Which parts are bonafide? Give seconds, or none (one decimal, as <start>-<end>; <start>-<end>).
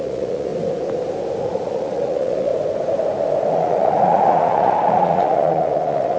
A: 0.5-1.4; 2.5-3.5